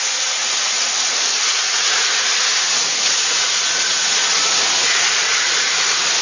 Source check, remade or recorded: remade